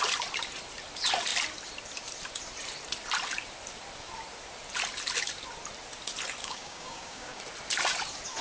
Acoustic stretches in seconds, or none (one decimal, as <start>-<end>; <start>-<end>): 0.0-6.4; 7.4-8.4